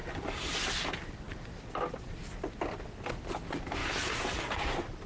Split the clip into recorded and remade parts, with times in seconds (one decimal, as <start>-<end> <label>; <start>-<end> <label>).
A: 0.0-3.8 recorded; 3.8-4.6 remade; 4.6-5.1 recorded